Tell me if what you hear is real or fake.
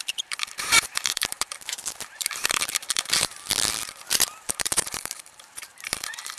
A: fake